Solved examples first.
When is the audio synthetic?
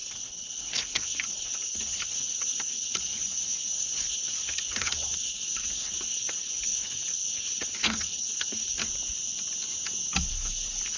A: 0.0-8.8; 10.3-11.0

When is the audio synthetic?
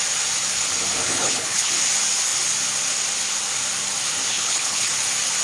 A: 1.0-1.7; 4.3-4.9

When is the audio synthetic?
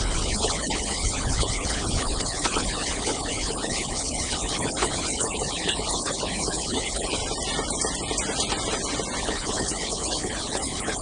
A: 0.0-7.2; 9.2-11.0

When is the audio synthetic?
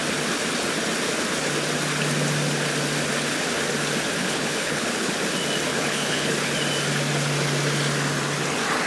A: 4.2-5.1; 5.7-6.3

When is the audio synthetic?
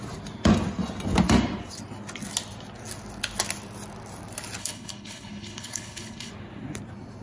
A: 4.6-6.3